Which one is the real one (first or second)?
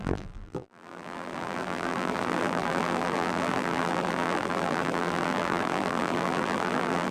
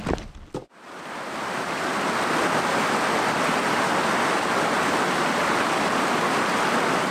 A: second